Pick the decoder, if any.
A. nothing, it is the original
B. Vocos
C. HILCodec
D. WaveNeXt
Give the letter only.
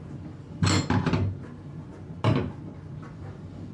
A